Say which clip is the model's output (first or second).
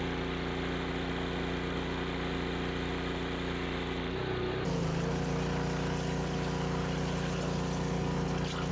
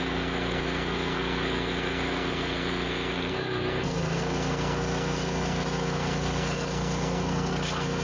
second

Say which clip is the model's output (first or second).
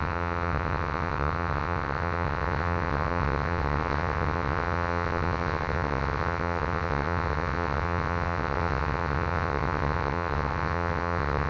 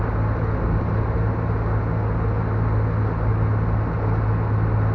first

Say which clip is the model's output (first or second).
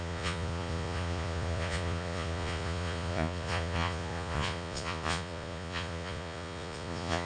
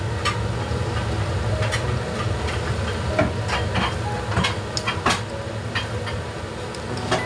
first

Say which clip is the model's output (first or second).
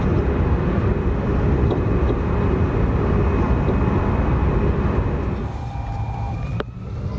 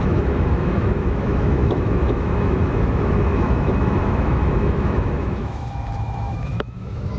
second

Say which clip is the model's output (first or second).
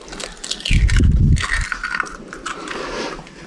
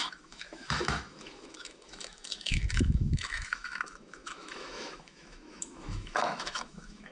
second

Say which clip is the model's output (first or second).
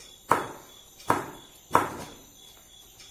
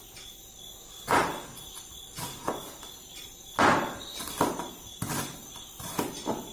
first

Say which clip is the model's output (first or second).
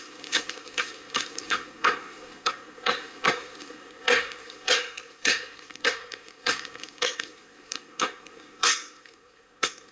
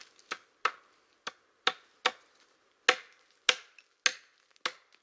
first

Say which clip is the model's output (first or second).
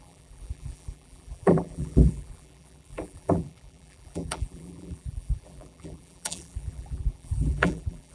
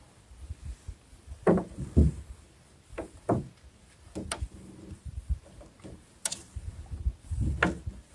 first